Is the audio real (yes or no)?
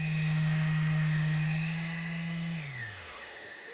no